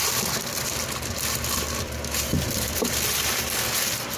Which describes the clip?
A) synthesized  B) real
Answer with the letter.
A